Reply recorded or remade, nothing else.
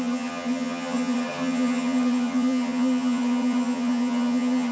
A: remade